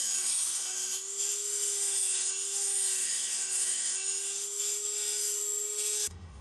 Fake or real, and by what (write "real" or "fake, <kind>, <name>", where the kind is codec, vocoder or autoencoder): fake, autoencoder, DAC-VAE